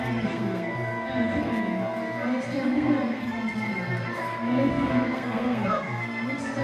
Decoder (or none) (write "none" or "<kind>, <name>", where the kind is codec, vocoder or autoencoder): codec, SNAC